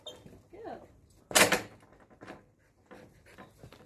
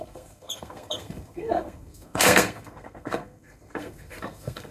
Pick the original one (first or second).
first